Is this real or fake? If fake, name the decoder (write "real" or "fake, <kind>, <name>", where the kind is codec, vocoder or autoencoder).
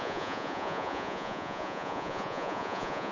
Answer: fake, vocoder, Vocos